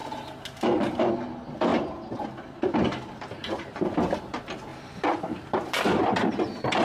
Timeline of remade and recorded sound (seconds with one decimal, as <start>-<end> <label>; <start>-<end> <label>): 0.0-1.7 recorded; 1.7-3.9 remade; 3.9-4.7 recorded; 4.7-6.1 remade; 6.1-6.8 recorded